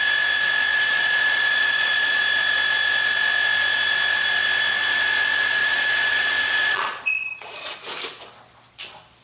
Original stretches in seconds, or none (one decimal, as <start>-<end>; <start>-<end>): 0.0-0.7; 2.2-5.6; 7.8-9.2